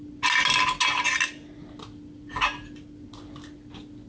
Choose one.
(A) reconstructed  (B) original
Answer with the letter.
B